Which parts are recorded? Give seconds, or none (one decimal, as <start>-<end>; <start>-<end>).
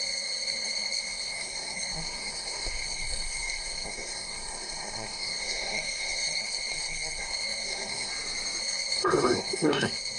8.1-8.6